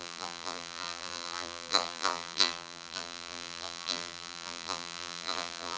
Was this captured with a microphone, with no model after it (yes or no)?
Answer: no